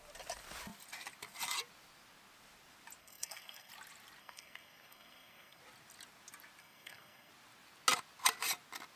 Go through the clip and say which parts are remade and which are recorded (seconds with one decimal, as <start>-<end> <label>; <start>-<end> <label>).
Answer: 0.0-3.0 recorded; 3.0-3.7 remade; 3.7-4.2 recorded; 4.2-5.6 remade; 5.6-6.6 recorded; 6.6-7.3 remade; 7.3-9.0 recorded